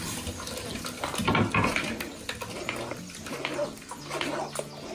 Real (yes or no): yes